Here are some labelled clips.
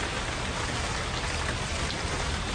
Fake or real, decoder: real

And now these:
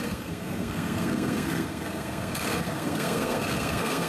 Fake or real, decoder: fake, codec, SNAC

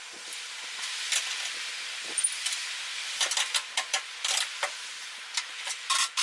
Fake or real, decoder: fake, vocoder, BigVGAN v2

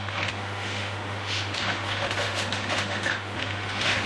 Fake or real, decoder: fake, autoencoder, DAC-VAE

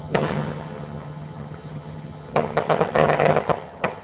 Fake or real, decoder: fake, vocoder, HiFi-GAN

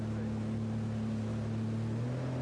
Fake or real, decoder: real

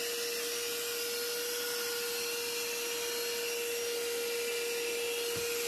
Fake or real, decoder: real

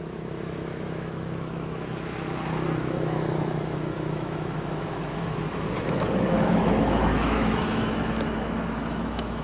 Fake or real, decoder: fake, autoencoder, DAC-VAE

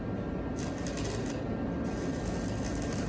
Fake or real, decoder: real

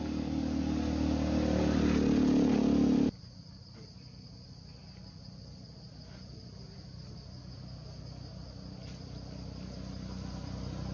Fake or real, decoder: real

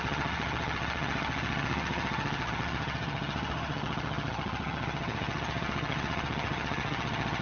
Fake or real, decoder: fake, vocoder, HiFi-GAN